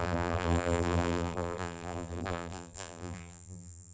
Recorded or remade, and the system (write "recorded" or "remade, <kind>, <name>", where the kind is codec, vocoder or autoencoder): remade, vocoder, BigVGAN v2